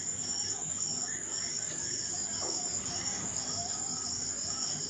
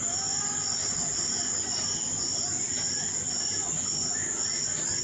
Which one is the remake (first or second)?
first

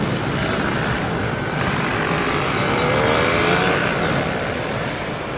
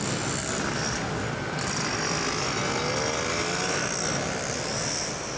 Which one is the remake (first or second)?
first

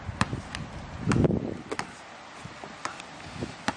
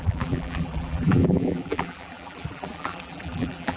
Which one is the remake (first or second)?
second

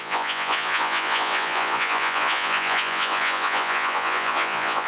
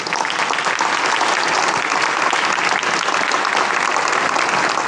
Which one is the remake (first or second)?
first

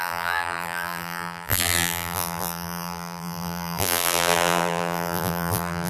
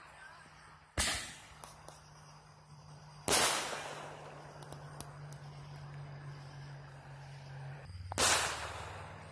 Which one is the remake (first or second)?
first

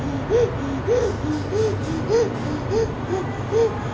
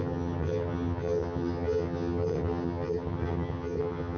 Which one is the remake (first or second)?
second